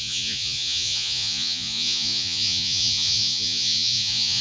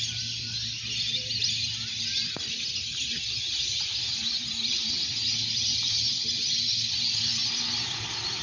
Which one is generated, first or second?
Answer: first